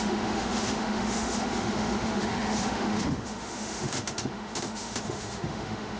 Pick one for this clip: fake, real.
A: fake